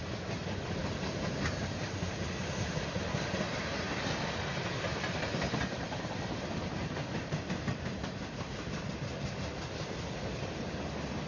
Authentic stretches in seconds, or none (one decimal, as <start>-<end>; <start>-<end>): 0.0-0.8; 3.6-4.9; 8.8-11.3

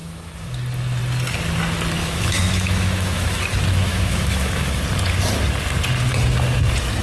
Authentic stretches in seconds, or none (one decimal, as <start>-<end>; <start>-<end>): 0.6-2.0; 3.4-3.9; 4.8-7.0

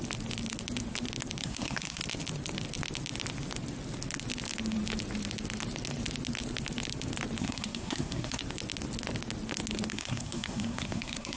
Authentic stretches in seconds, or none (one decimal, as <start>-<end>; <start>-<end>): 0.0-1.4; 2.0-7.4; 8.4-9.9

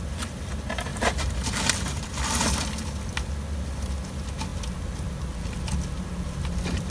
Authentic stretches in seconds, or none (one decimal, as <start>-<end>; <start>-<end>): 0.0-0.9; 2.1-6.9

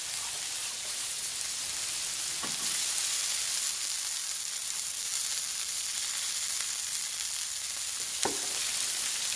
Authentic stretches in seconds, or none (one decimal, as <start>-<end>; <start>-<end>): 0.0-0.6; 1.3-9.4

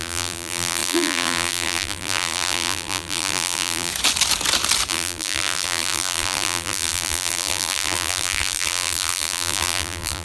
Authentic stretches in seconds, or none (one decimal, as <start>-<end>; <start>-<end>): 3.9-4.9

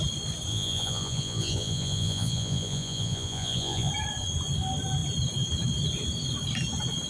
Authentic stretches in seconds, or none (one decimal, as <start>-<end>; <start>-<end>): 0.0-0.5; 3.9-7.1

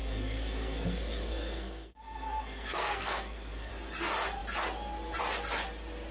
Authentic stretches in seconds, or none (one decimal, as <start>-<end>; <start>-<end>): 3.7-6.1